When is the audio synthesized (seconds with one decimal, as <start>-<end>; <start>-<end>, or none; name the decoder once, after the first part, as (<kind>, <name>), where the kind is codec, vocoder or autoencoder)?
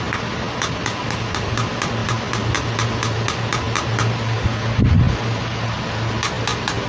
2.0-2.5 (vocoder, BigVGAN v2)